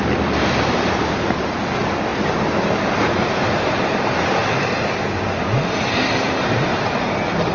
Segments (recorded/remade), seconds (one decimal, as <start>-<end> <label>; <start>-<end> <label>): 0.0-1.6 remade; 1.6-2.1 recorded; 2.1-3.8 remade; 3.8-7.5 recorded

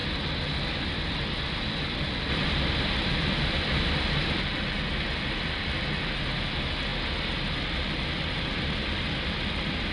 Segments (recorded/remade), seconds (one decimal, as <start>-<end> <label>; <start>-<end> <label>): 0.0-0.9 recorded; 0.9-6.9 remade; 6.9-7.6 recorded; 7.6-9.9 remade

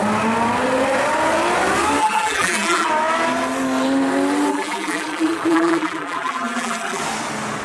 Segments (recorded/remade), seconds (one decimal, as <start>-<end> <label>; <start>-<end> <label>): 0.0-2.0 recorded; 2.0-2.9 remade; 2.9-4.5 recorded; 4.5-7.0 remade; 7.0-7.6 recorded

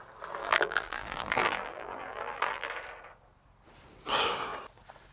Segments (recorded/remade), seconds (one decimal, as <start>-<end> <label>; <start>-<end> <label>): 0.0-0.4 recorded; 0.4-2.7 remade; 2.7-5.1 recorded

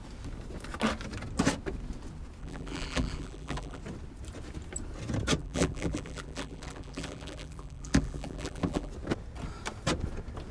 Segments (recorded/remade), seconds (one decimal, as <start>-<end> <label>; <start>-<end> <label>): 0.0-2.4 recorded; 2.4-3.8 remade; 3.8-5.4 recorded; 5.4-8.9 remade; 8.9-10.5 recorded

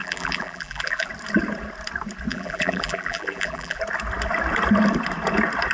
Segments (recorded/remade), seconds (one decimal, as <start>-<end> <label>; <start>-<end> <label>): 0.0-1.1 remade; 1.1-2.3 recorded; 2.3-3.8 remade; 3.8-5.7 recorded

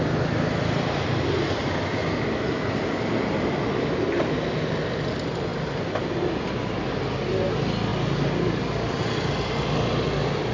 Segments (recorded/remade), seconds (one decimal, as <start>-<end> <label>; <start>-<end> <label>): 0.0-10.5 recorded

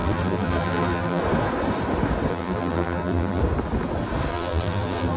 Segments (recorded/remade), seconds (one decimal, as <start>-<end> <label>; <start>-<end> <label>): 0.0-1.2 remade; 1.2-2.3 recorded; 2.3-3.4 remade; 3.4-4.3 recorded; 4.3-5.2 remade